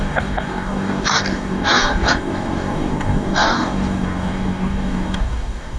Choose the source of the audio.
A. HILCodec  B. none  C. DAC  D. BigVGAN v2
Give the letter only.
C